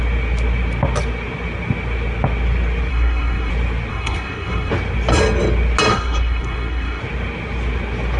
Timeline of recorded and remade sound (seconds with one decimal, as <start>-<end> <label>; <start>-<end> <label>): 0.0-2.9 recorded; 2.9-3.5 remade; 3.5-3.9 recorded; 3.9-4.7 remade; 4.7-5.9 recorded; 5.9-7.0 remade; 7.0-8.2 recorded